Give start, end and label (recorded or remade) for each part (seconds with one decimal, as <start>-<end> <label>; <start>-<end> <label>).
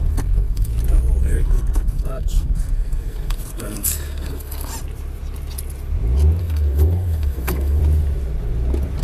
0.0-0.7 remade; 0.7-1.2 recorded; 1.2-4.7 remade; 4.7-6.4 recorded; 6.4-7.8 remade; 7.8-9.0 recorded